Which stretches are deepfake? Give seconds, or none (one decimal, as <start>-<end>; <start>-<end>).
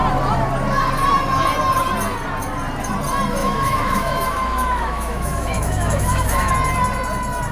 3.4-6.5